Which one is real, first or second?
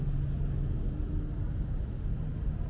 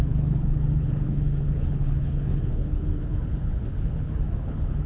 first